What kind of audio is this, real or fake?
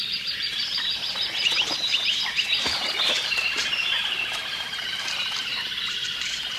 fake